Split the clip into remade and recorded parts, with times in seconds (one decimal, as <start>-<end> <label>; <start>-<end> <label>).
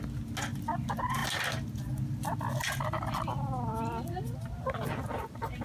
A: 0.0-5.6 recorded